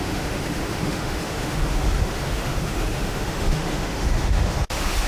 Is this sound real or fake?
fake